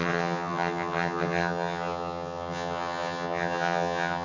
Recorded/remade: remade